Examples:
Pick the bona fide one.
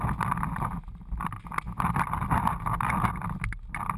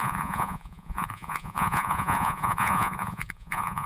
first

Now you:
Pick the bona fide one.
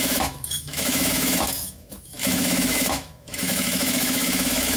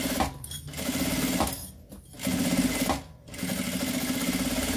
second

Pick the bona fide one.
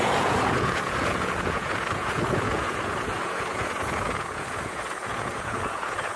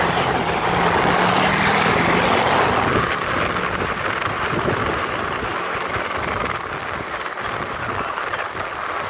second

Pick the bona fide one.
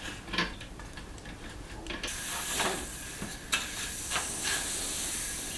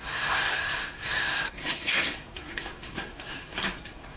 first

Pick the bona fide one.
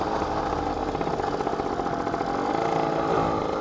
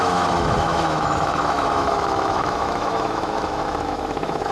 first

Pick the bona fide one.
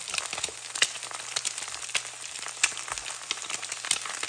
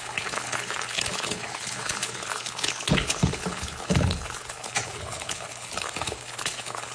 first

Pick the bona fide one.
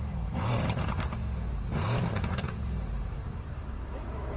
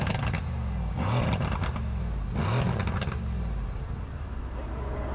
second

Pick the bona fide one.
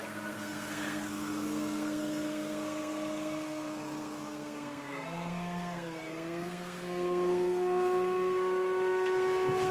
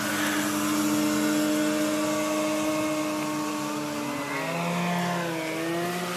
second